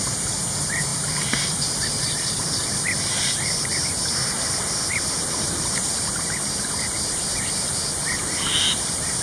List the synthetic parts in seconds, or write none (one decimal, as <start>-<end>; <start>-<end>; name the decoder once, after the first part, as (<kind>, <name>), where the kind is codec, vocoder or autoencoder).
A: none